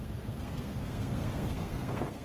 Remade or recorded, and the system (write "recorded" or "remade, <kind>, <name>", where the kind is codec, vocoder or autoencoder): remade, codec, SNAC